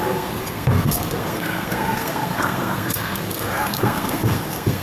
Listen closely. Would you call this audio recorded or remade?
remade